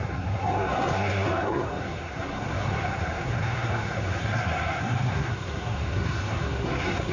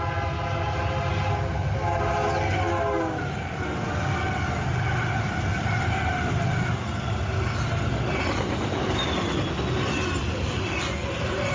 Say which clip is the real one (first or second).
second